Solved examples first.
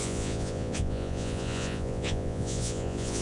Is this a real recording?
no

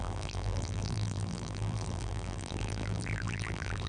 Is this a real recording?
no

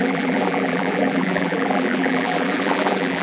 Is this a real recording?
no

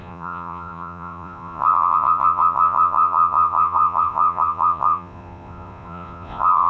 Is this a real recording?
no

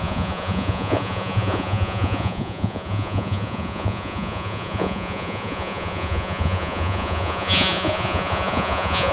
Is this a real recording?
no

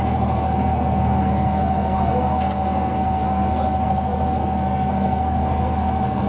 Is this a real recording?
no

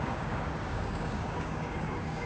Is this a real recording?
no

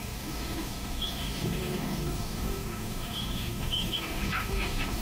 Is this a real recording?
no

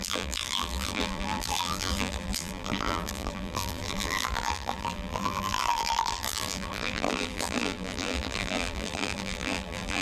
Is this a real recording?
no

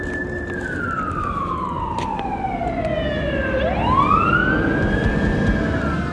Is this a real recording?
yes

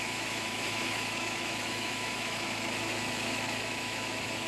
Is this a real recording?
no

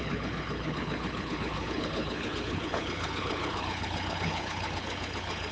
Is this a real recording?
no